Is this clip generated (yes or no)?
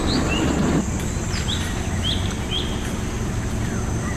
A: no